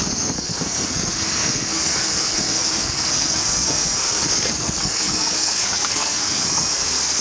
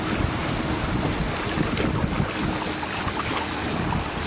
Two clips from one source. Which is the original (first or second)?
second